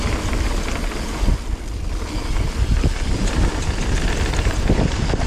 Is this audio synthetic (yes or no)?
no